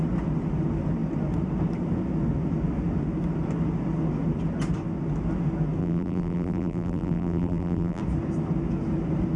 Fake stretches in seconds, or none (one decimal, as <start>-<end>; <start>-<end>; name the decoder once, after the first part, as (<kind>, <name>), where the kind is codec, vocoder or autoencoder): 5.8-8.0 (vocoder, BigVGAN v2)

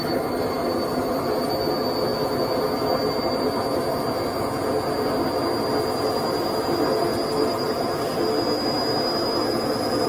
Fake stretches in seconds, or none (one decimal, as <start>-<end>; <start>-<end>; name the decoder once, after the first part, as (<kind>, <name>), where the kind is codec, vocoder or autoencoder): none

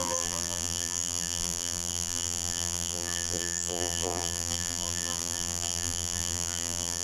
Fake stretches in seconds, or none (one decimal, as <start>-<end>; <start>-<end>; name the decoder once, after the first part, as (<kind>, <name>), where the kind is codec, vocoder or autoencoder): 0.0-7.0 (vocoder, BigVGAN v2)

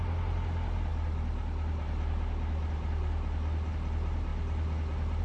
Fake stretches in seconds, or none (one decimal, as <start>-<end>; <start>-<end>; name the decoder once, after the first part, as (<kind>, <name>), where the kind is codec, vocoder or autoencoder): none

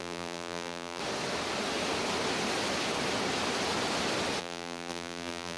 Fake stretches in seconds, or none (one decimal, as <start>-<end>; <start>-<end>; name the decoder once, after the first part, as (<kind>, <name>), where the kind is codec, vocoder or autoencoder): 0.0-1.0 (vocoder, BigVGAN v2); 4.4-5.6